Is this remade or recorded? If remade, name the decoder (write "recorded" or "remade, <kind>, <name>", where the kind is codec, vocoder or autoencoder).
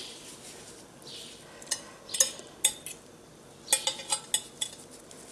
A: recorded